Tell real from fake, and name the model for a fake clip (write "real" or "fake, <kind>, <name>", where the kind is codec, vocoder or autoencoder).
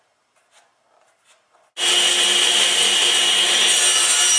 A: real